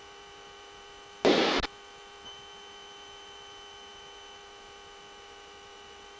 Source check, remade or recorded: recorded